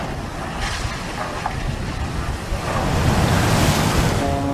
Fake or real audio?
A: real